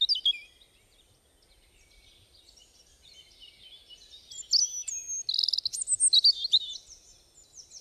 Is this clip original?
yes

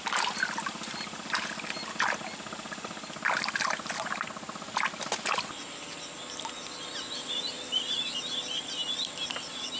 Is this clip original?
yes